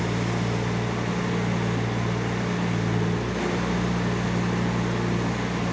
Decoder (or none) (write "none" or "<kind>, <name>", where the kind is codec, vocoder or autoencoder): none